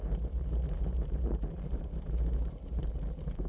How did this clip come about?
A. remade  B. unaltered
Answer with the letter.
A